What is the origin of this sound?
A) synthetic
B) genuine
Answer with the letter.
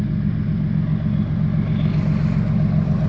B